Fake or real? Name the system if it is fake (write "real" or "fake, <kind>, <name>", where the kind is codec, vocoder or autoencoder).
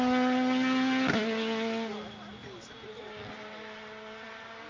real